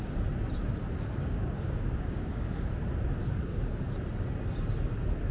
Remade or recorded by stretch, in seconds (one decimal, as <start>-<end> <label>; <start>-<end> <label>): 0.0-1.2 recorded; 1.2-2.7 remade; 2.7-3.2 recorded; 3.2-3.9 remade; 3.9-5.3 recorded